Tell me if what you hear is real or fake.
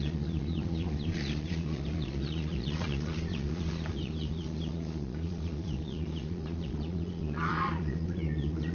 fake